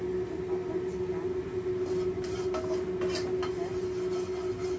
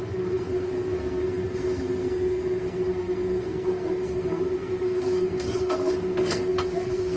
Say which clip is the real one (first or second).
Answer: first